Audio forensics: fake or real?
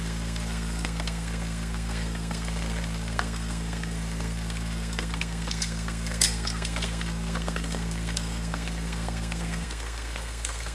fake